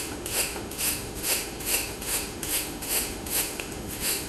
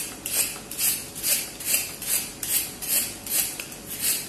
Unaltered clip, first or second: second